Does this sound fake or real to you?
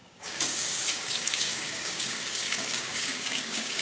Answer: fake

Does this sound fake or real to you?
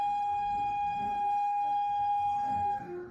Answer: fake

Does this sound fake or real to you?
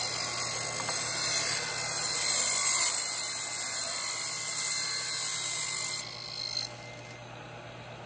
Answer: real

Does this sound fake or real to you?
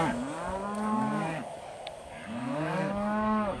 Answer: fake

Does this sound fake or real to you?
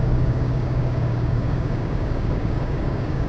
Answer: fake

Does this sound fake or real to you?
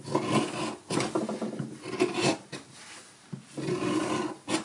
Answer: real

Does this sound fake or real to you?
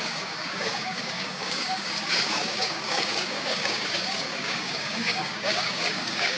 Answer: fake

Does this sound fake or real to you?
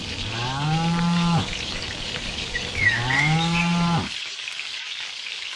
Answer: fake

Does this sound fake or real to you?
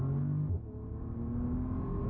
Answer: real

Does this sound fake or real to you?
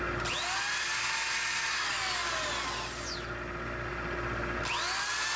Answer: real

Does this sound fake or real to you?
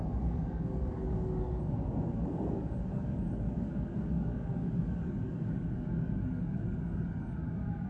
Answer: fake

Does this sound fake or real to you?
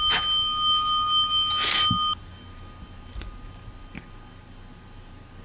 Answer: real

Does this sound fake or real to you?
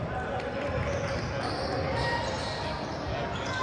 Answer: real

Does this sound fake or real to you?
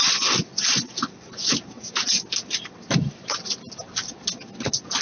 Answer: real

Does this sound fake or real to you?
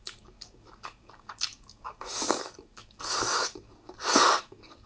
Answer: fake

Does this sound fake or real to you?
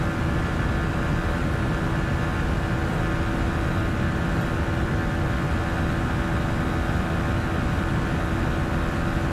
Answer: real